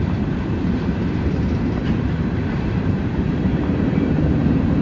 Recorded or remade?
remade